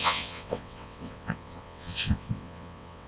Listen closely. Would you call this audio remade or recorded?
remade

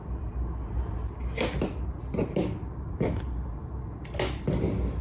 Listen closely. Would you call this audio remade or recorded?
recorded